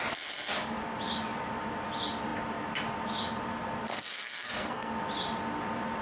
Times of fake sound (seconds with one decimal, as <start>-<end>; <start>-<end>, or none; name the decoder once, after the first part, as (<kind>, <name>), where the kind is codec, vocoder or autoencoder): 3.8-4.9 (codec, SNAC)

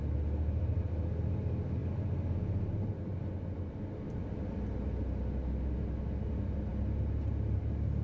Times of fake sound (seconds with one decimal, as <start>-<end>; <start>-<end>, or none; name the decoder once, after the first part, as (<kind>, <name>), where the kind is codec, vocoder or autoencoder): none